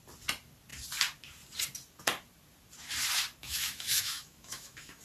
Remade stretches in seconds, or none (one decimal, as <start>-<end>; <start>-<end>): 3.4-5.0